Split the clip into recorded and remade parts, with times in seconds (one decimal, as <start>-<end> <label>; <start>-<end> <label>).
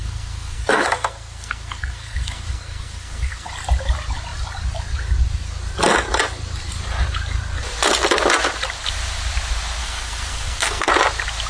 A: 0.0-3.5 remade; 3.5-9.8 recorded; 9.8-10.9 remade; 10.9-11.5 recorded